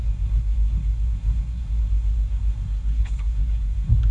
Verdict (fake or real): fake